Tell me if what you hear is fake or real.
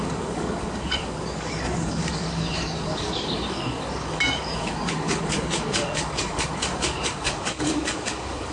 fake